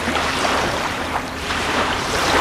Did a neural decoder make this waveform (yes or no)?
yes